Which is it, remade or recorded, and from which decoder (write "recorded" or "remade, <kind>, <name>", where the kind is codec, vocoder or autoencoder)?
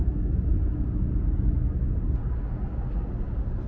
recorded